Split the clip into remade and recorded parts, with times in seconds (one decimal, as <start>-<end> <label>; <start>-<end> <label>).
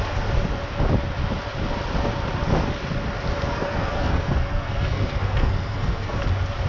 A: 0.0-3.5 recorded; 3.5-6.2 remade; 6.2-6.7 recorded